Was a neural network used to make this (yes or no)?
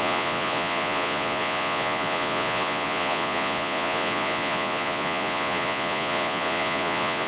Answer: yes